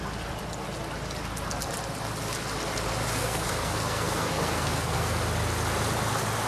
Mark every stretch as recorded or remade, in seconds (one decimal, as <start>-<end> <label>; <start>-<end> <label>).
0.0-3.2 recorded; 3.2-5.2 remade; 5.2-6.5 recorded